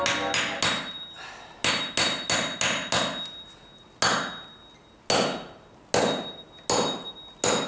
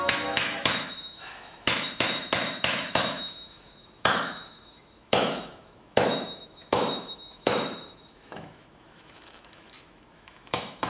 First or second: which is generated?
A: second